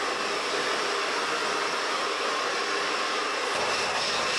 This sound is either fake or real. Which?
real